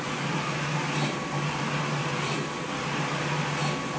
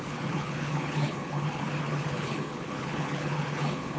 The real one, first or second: first